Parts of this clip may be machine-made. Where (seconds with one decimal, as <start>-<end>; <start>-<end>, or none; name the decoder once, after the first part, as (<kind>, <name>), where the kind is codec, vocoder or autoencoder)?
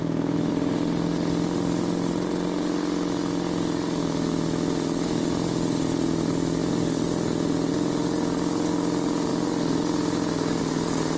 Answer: 0.0-0.5 (autoencoder, DAC-VAE); 4.0-5.2